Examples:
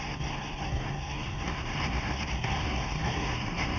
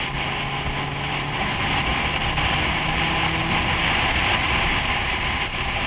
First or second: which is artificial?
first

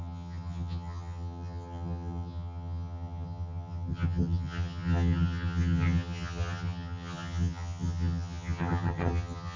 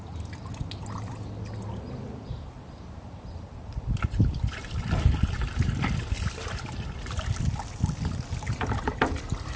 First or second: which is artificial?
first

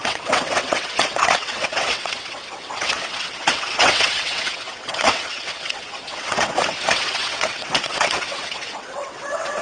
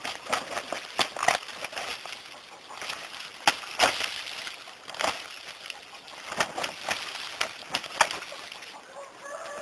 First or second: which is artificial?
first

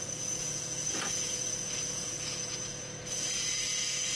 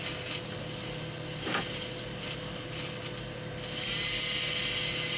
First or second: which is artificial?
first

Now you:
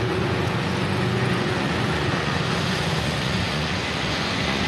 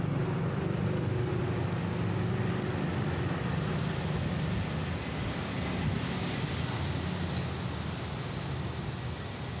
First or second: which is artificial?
first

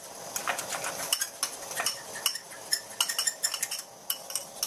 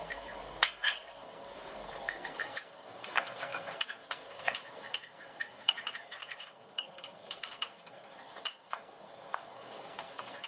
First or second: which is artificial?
second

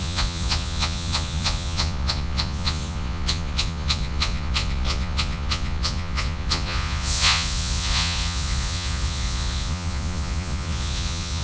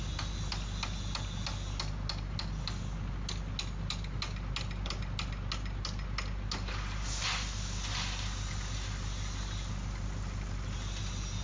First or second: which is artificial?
first